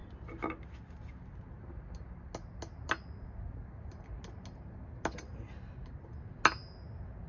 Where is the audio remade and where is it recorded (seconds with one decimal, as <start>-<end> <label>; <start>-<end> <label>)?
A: 0.0-7.3 recorded